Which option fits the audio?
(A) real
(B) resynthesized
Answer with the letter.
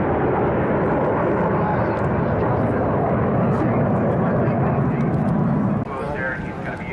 A